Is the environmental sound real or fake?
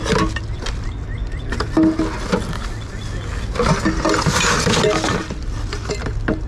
real